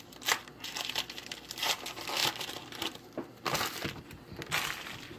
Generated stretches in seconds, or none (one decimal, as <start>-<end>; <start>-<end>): none